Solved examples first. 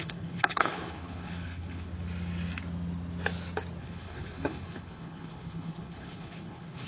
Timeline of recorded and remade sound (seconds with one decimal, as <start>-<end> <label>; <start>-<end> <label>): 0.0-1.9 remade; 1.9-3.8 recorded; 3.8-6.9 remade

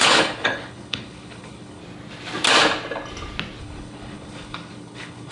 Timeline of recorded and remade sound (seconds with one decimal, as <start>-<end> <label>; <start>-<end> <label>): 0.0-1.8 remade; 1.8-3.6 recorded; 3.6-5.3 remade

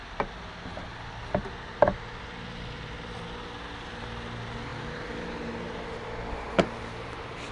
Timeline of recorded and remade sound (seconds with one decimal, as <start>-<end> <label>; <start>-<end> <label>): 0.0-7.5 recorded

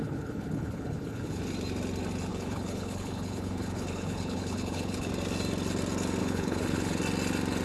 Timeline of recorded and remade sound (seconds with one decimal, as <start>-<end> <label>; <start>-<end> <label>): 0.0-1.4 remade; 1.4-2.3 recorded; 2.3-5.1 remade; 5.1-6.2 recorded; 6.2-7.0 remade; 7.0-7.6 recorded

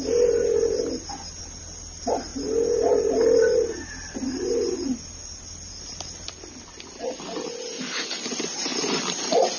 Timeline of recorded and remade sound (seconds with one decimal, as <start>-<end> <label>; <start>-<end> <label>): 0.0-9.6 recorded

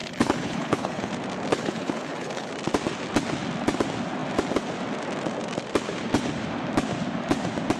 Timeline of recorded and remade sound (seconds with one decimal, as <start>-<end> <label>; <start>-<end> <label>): 0.0-1.1 remade; 1.1-1.5 recorded; 1.5-2.5 remade; 2.5-7.8 recorded